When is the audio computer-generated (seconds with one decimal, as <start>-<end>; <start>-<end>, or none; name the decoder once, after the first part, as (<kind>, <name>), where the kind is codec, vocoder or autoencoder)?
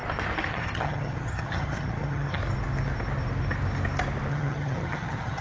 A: 0.5-2.4 (vocoder, HiFi-GAN); 4.3-5.4